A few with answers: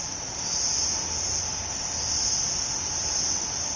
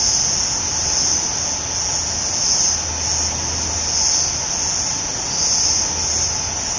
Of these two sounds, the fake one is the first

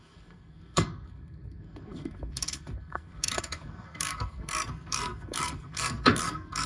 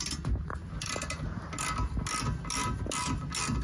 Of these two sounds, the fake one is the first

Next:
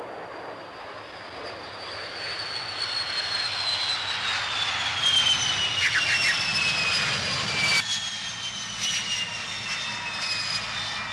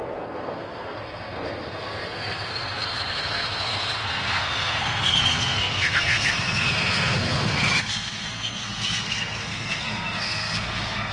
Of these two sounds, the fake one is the second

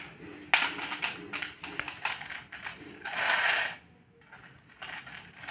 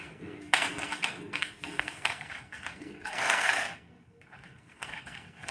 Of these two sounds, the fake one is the second